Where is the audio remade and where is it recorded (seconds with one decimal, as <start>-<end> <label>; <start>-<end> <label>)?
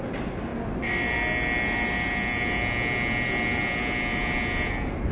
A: 0.0-5.1 recorded